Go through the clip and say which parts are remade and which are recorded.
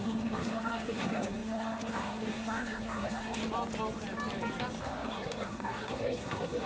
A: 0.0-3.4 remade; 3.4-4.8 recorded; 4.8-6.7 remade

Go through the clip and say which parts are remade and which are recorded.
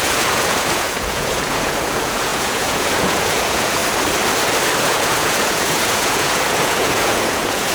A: 0.0-3.8 remade; 3.8-4.8 recorded; 4.8-7.7 remade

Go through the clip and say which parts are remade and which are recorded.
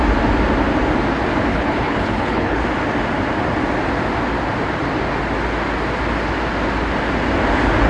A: 0.0-1.5 recorded; 1.5-2.6 remade; 2.6-7.9 recorded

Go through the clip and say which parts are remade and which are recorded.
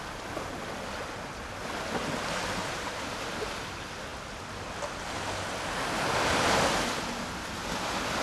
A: 0.0-8.2 recorded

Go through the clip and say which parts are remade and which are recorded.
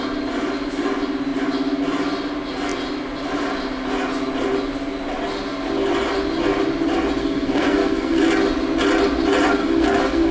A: 0.0-7.2 recorded; 7.2-8.2 remade; 8.2-9.6 recorded; 9.6-10.3 remade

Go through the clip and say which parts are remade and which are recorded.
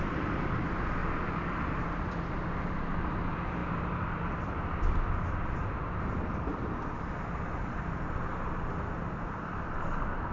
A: 0.0-1.0 remade; 1.0-2.0 recorded; 2.0-10.3 remade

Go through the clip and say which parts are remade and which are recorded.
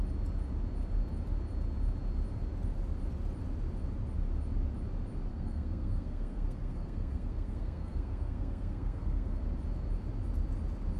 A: 0.0-5.3 recorded; 5.3-9.4 remade; 9.4-11.0 recorded